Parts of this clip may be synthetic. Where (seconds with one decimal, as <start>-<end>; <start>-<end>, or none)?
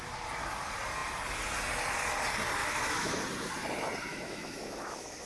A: 2.6-3.2; 4.1-5.3